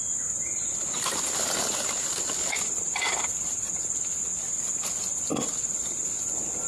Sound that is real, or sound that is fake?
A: real